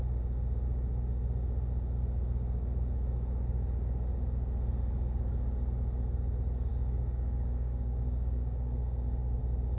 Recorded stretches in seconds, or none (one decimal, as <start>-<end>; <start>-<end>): 0.0-6.7; 9.4-9.8